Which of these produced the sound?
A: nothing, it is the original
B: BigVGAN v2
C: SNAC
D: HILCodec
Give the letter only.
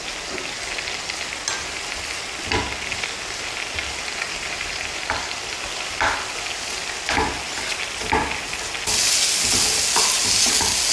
A